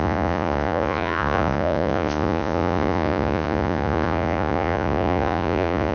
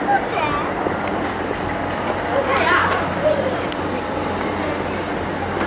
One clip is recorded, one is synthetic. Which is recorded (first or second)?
second